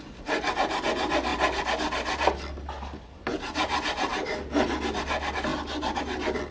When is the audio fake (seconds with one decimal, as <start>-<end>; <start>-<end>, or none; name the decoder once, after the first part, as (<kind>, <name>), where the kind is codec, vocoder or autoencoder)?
none